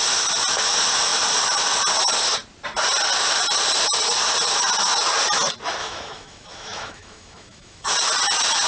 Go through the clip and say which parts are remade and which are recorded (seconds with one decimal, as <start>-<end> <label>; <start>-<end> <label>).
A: 0.0-5.8 recorded; 5.8-7.9 remade; 7.9-8.7 recorded